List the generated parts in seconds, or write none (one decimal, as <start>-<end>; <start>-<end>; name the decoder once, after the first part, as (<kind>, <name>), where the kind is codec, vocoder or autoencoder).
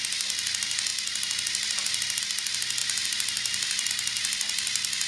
none